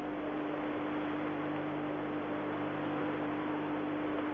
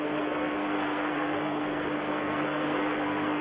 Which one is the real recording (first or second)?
first